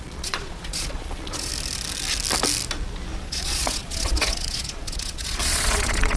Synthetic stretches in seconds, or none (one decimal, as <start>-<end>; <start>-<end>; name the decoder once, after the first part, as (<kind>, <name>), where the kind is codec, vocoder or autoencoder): 0.0-1.5 (vocoder, Vocos); 3.2-6.2